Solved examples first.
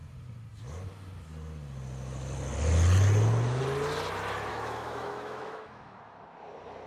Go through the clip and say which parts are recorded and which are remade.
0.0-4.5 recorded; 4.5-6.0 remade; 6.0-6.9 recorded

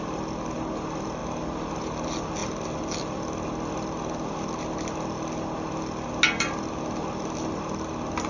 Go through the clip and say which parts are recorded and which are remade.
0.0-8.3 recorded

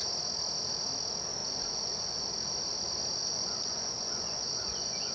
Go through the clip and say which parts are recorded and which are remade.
0.0-1.4 recorded; 1.4-2.3 remade; 2.3-3.2 recorded; 3.2-5.1 remade

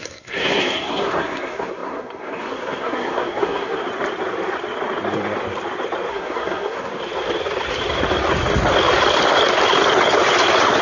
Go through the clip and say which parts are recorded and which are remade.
0.0-3.8 remade; 3.8-6.1 recorded; 6.1-6.9 remade; 6.9-10.8 recorded